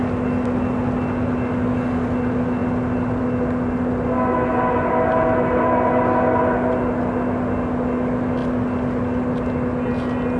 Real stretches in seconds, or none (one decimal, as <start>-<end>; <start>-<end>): 0.0-10.4